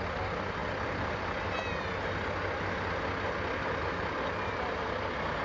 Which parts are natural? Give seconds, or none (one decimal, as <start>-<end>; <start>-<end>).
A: 0.0-5.4